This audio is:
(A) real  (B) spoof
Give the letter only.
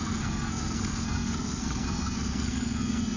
B